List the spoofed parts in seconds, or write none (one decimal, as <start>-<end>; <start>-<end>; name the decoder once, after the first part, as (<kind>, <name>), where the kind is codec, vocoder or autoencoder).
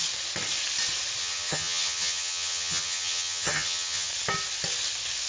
1.2-4.1 (vocoder, HiFi-GAN)